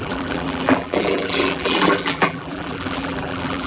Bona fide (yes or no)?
no